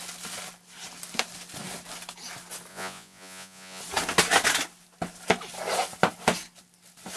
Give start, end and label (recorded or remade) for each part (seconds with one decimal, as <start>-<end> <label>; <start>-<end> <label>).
0.0-2.7 recorded; 2.7-3.8 remade; 3.8-7.2 recorded

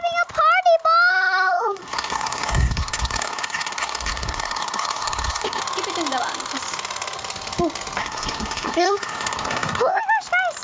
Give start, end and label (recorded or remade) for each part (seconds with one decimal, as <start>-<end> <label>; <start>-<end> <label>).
0.0-1.1 recorded; 1.1-5.6 remade; 5.6-8.0 recorded; 8.0-10.0 remade; 10.0-10.6 recorded

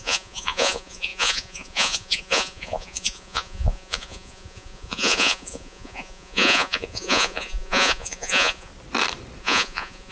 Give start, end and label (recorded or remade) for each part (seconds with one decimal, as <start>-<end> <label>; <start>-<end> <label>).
0.0-8.7 remade; 8.7-9.4 recorded; 9.4-10.1 remade

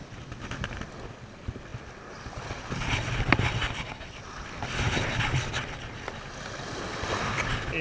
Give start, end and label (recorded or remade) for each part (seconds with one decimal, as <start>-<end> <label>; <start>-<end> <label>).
0.0-7.8 recorded

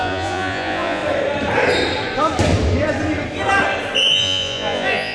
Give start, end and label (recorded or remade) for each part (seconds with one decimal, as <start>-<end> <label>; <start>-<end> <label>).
0.0-1.0 remade; 1.0-4.1 recorded; 4.1-5.1 remade

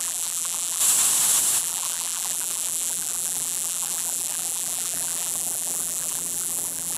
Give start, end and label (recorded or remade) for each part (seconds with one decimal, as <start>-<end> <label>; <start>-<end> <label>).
0.0-0.8 remade; 0.8-1.6 recorded; 1.6-7.0 remade

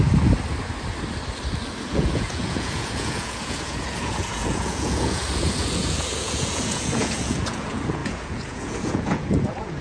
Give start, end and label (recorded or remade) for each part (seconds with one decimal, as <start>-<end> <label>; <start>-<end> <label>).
0.0-1.9 recorded; 1.9-9.8 remade